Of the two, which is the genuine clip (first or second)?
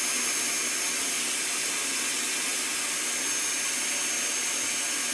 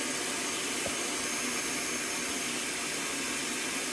first